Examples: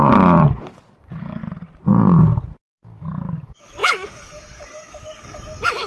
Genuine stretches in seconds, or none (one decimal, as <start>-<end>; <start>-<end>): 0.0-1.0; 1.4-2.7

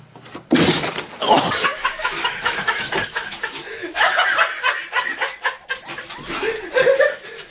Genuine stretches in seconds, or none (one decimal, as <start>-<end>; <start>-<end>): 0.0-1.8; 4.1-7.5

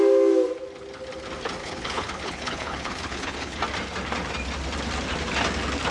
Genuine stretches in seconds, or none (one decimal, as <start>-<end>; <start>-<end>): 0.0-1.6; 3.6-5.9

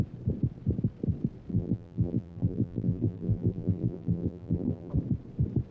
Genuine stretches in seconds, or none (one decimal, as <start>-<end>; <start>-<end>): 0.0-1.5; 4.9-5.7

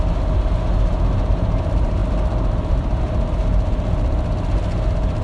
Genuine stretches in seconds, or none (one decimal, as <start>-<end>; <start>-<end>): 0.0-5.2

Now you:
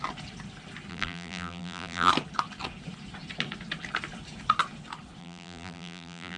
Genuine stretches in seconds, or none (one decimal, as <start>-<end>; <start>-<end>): 0.0-0.9; 2.1-5.2

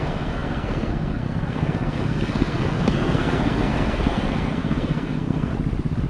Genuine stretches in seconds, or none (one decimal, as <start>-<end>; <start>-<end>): 5.5-6.1

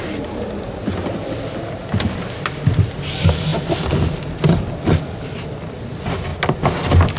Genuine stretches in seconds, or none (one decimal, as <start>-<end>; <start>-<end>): 0.0-7.2